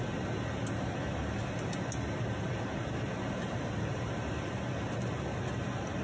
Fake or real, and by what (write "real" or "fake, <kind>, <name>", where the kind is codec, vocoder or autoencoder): real